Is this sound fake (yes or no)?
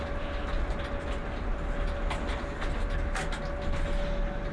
no